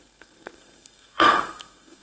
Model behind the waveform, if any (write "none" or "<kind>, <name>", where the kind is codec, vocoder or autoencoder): codec, SNAC